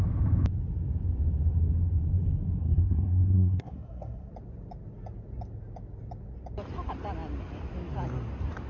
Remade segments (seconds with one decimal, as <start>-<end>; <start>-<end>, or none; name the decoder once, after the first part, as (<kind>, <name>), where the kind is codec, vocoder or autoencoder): 2.6-4.3 (codec, SNAC)